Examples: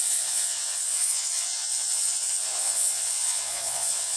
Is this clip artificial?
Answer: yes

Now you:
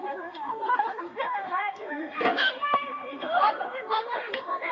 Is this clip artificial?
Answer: yes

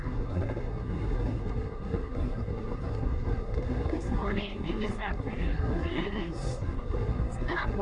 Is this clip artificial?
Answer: yes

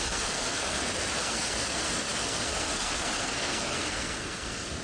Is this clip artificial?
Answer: yes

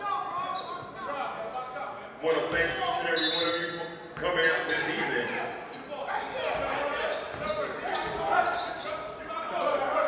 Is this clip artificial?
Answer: no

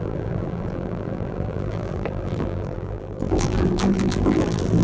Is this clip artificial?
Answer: yes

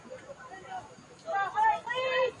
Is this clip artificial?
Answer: yes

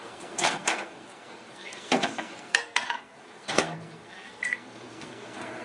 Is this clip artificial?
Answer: yes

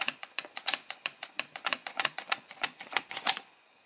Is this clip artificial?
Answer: yes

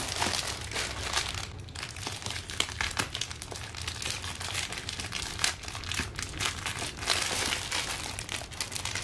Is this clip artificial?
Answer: no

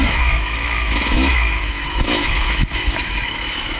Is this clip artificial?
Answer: yes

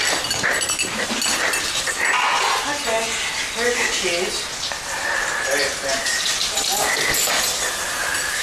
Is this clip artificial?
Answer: no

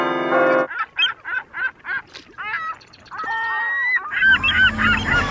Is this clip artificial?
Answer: no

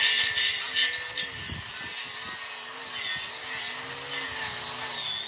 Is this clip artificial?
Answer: no